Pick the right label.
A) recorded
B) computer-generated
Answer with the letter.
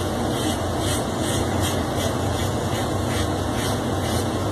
B